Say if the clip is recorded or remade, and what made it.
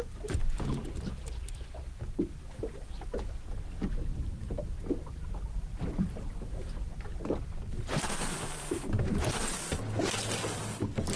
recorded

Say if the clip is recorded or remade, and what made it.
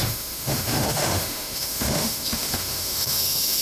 remade, autoencoder, DAC-VAE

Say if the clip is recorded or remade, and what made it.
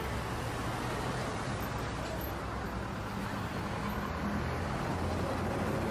recorded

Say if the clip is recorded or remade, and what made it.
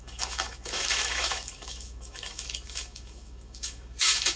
remade, autoencoder, DAC-VAE